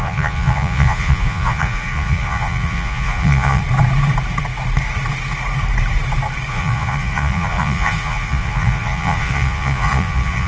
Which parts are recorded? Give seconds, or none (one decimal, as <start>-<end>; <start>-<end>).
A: 3.6-6.5